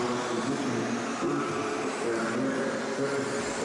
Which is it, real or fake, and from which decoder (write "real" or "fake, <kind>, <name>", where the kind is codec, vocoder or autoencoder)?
real